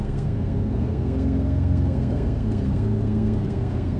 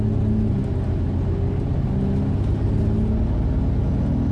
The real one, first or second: second